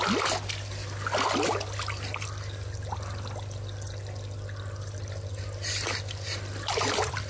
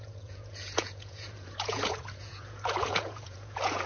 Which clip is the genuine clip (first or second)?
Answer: first